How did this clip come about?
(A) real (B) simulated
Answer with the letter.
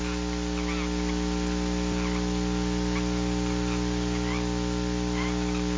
A